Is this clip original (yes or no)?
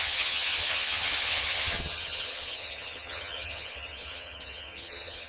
no